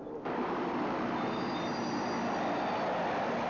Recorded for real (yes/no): yes